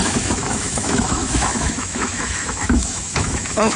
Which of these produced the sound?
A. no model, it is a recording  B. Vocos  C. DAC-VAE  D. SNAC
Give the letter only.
C